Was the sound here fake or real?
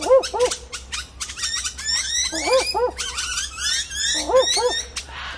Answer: real